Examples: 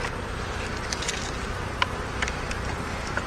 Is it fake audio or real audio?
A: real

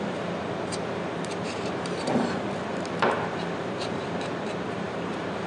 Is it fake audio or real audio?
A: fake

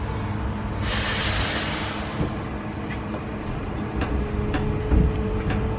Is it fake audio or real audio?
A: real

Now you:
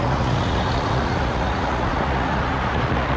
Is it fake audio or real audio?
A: fake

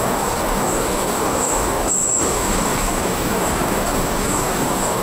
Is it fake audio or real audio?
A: fake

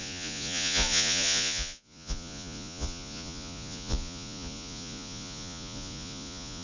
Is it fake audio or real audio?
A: fake